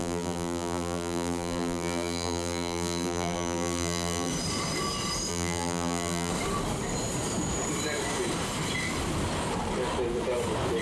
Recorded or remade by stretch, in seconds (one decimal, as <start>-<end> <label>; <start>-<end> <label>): 0.0-4.3 remade; 4.3-5.3 recorded; 5.3-6.3 remade; 6.3-10.8 recorded